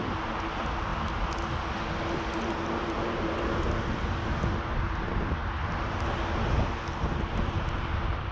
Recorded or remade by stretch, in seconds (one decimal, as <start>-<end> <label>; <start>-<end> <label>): 0.0-8.3 recorded